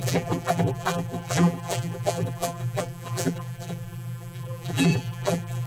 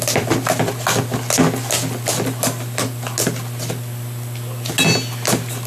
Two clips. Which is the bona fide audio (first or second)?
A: second